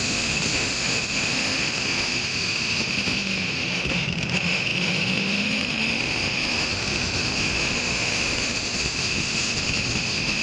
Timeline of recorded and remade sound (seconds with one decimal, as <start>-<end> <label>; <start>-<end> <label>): 0.0-10.4 remade